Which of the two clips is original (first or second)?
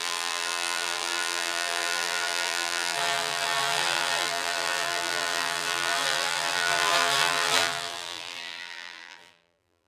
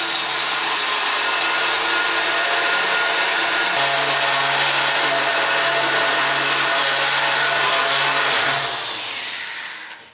second